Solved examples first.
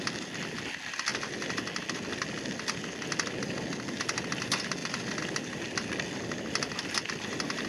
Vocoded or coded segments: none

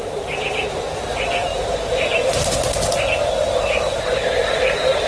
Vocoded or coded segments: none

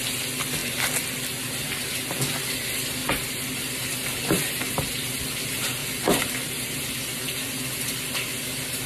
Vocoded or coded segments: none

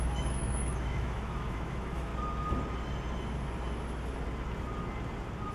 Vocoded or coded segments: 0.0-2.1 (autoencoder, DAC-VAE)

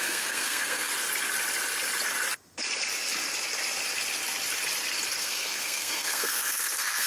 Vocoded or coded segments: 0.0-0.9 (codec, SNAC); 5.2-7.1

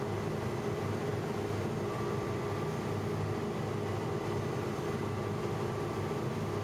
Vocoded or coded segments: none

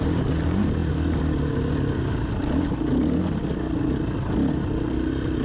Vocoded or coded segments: none

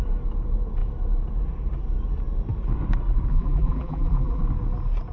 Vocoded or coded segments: 3.3-4.4 (vocoder, BigVGAN v2)